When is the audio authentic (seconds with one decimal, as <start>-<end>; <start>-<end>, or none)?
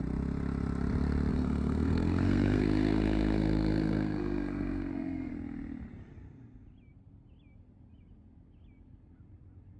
0.0-1.3; 5.3-9.8